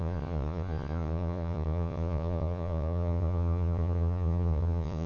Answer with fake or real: fake